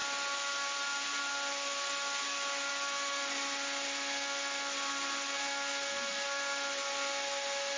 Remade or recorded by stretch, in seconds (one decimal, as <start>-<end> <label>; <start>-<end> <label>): 0.0-7.8 recorded

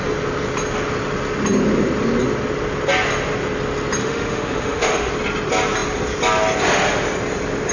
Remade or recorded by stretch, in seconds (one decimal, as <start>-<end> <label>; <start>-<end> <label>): 0.0-4.0 recorded; 4.0-5.1 remade; 5.1-7.7 recorded

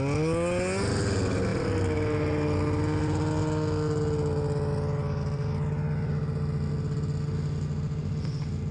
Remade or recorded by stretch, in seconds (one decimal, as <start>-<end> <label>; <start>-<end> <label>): 0.0-8.7 recorded

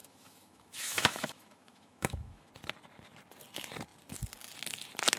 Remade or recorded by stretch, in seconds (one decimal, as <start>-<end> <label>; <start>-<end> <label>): 0.0-2.5 remade; 2.5-5.2 recorded

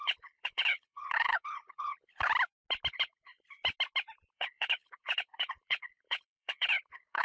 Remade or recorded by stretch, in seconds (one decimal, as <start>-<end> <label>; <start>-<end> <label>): 0.0-2.3 remade; 2.3-2.9 recorded; 2.9-3.3 remade; 3.3-4.3 recorded; 4.3-7.2 remade

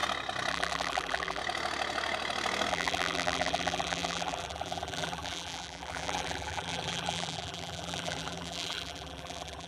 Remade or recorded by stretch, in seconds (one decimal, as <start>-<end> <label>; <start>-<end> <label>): 0.0-0.5 recorded; 0.5-1.4 remade; 1.4-2.7 recorded; 2.7-9.7 remade

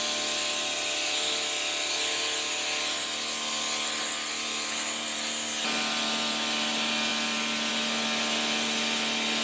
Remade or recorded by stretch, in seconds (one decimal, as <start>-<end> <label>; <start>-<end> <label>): 0.0-9.4 recorded